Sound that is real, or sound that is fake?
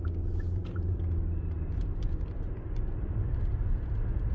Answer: real